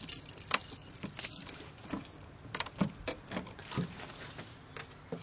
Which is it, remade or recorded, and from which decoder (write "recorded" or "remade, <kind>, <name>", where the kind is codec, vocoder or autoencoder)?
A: recorded